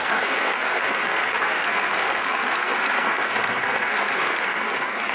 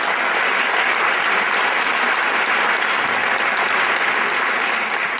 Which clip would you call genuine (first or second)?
second